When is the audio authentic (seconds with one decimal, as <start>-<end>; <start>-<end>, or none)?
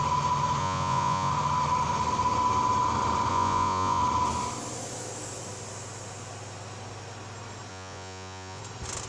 0.0-0.6; 1.3-3.3; 4.0-7.7; 8.6-9.1